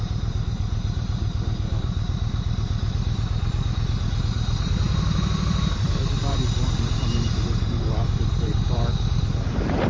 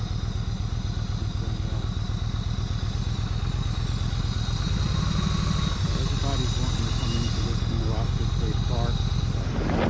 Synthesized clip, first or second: first